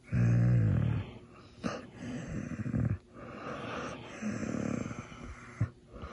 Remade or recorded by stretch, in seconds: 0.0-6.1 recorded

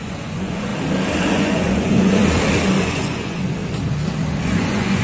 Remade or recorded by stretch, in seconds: 0.0-0.7 remade; 0.7-1.3 recorded; 1.3-2.2 remade; 2.2-2.8 recorded; 2.8-3.6 remade; 3.6-4.4 recorded; 4.4-5.0 remade

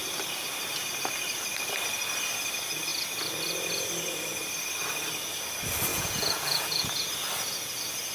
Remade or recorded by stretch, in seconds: 0.0-5.9 recorded; 5.9-7.1 remade; 7.1-8.1 recorded

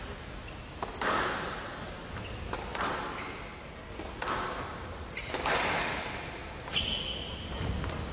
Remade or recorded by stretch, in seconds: 0.0-8.1 recorded

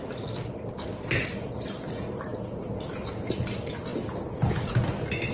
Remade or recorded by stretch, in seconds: 0.0-5.3 recorded